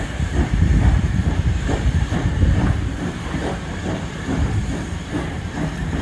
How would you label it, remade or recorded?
remade